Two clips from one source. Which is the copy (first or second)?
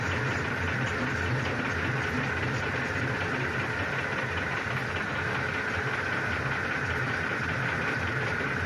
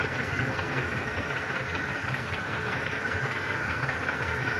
second